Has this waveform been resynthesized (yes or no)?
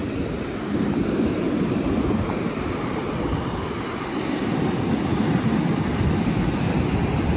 no